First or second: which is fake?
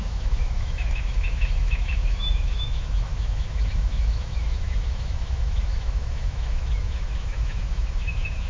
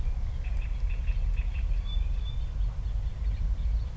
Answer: first